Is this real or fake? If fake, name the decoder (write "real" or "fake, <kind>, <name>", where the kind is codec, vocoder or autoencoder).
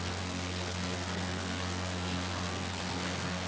fake, codec, SNAC